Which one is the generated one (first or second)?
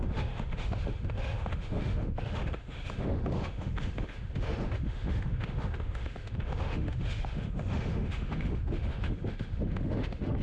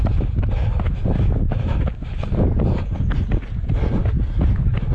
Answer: first